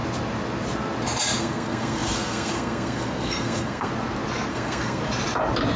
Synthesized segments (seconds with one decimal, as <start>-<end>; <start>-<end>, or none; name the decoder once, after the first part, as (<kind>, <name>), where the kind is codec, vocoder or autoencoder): 1.4-3.9 (codec, SNAC); 4.5-5.0